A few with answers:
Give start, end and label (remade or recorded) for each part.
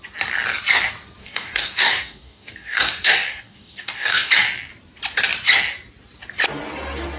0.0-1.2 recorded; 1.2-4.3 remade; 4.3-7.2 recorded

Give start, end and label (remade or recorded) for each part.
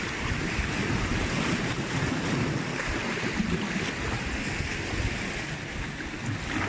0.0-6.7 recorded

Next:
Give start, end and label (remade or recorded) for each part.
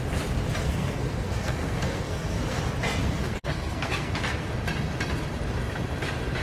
0.0-0.6 recorded; 0.6-2.6 remade; 2.6-3.0 recorded; 3.0-4.5 remade; 4.5-6.4 recorded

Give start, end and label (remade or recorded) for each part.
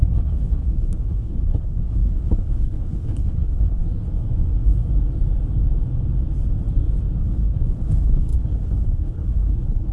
0.0-3.8 remade; 3.8-7.2 recorded; 7.2-9.9 remade